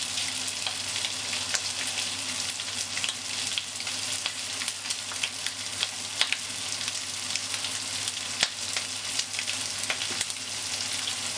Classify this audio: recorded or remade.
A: recorded